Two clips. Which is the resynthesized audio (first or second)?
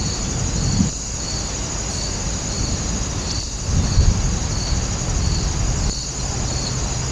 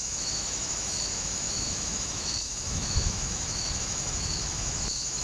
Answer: second